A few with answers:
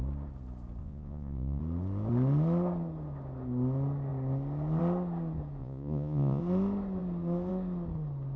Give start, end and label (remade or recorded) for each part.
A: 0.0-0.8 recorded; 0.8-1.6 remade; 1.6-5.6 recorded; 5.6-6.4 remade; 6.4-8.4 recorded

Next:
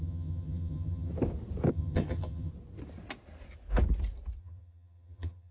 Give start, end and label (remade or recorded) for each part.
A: 0.0-1.1 remade; 1.1-1.7 recorded; 1.7-2.5 remade; 2.5-4.4 recorded; 4.4-5.5 remade

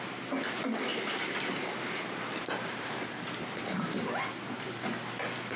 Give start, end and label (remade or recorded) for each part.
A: 0.0-5.6 recorded

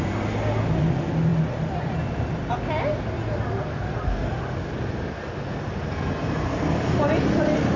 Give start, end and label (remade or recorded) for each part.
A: 0.0-7.8 recorded

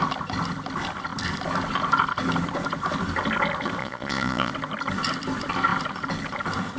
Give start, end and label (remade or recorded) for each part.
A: 0.0-3.8 recorded; 3.8-4.5 remade; 4.5-6.8 recorded

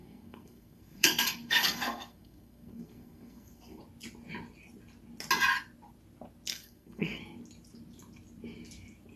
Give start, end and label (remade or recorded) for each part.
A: 0.0-3.8 remade; 3.8-6.5 recorded; 6.5-7.2 remade; 7.2-9.2 recorded

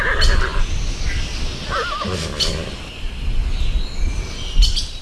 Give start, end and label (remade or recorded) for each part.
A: 0.0-5.0 recorded